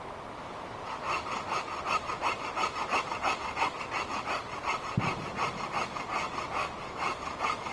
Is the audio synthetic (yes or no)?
no